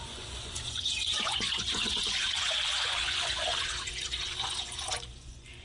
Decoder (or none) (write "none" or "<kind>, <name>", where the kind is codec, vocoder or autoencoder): vocoder, Vocos